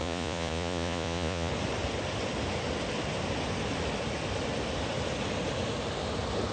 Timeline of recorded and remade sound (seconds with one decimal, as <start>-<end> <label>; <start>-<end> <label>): 0.0-1.5 remade; 1.5-6.5 recorded